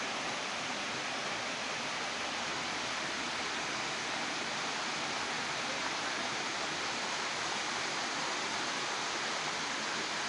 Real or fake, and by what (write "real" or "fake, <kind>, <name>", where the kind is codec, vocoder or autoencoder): real